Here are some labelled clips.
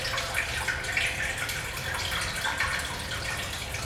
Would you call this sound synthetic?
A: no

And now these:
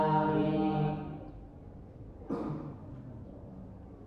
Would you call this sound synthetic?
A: no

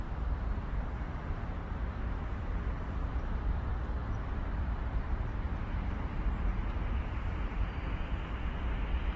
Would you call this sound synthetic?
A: yes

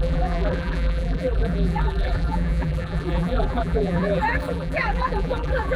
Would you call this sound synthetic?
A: yes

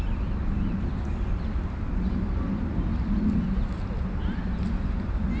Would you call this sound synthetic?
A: no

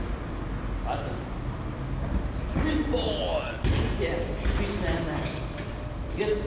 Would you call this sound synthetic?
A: yes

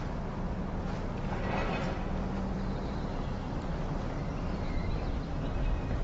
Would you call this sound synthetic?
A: no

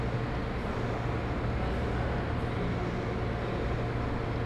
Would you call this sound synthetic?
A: no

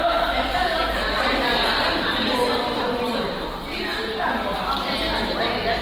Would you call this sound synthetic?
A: yes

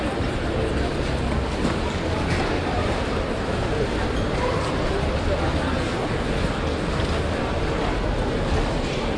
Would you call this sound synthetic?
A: no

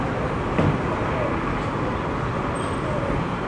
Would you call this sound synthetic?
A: no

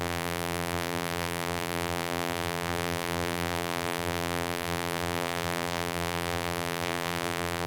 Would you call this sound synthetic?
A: yes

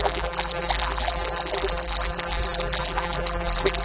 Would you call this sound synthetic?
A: yes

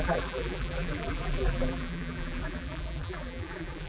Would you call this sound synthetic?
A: yes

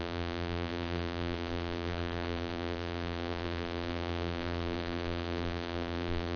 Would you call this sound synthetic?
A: yes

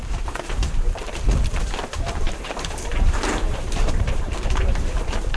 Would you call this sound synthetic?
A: yes